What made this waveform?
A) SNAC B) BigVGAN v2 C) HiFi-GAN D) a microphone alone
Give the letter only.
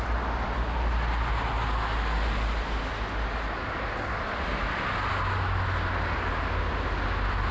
D